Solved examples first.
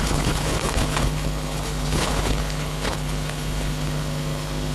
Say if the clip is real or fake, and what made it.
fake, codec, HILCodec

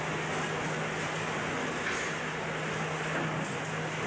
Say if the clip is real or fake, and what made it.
real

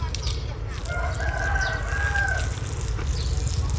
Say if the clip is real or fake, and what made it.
real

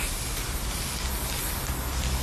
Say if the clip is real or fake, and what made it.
real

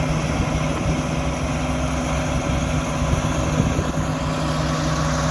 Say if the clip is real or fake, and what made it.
real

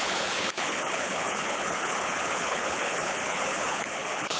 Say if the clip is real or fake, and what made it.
fake, codec, HILCodec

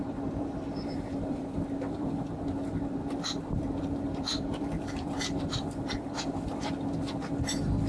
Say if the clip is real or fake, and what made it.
fake, vocoder, BigVGAN v2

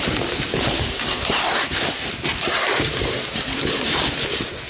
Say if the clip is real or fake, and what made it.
real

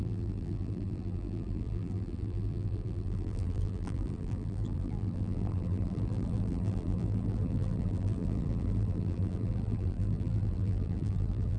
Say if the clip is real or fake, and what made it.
fake, vocoder, BigVGAN v2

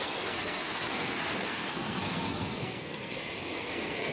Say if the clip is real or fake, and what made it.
fake, codec, SNAC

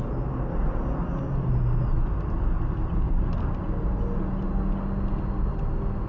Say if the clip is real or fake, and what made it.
real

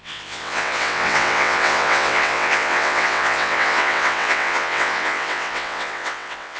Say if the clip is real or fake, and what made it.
fake, vocoder, WaveNeXt